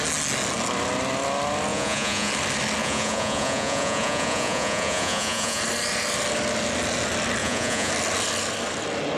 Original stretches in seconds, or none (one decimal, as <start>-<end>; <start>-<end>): 0.0-1.7; 2.3-2.8; 5.6-7.4; 7.9-9.2